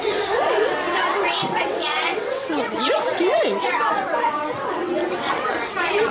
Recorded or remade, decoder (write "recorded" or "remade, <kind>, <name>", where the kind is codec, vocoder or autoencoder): remade, vocoder, WaveNeXt